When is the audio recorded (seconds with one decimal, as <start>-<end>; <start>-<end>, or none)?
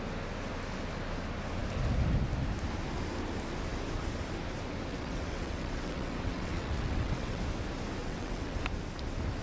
0.0-4.9; 7.4-8.0; 8.6-9.4